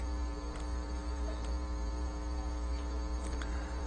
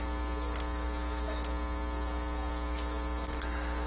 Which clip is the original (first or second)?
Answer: second